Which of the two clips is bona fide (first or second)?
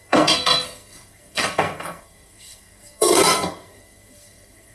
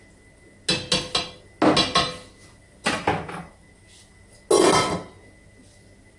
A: second